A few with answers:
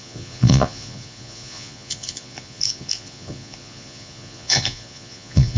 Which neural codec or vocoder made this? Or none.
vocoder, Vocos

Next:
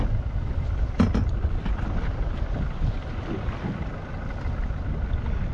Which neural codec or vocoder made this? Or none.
none